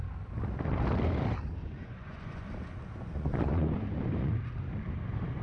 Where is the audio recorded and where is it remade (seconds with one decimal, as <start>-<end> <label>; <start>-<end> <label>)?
0.0-1.6 recorded; 1.6-2.5 remade; 2.5-3.1 recorded; 3.1-4.3 remade; 4.3-5.4 recorded